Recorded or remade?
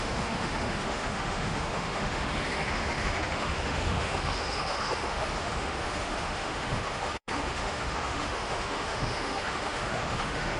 remade